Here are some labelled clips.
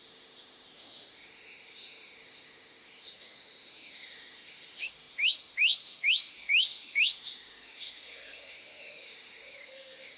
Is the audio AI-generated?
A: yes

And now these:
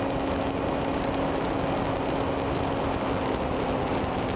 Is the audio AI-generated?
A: no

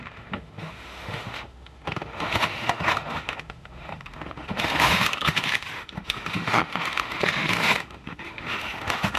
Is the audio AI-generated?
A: yes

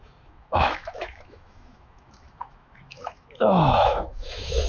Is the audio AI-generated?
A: yes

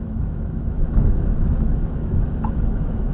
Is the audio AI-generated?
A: yes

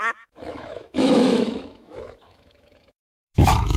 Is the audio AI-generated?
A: yes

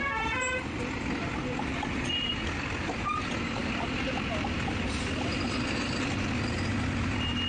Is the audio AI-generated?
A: no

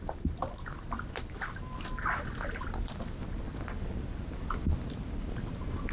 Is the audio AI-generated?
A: no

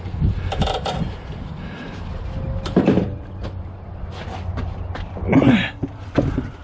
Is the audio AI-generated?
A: no